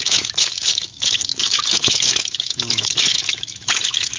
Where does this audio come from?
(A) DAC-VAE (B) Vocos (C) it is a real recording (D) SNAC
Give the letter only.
A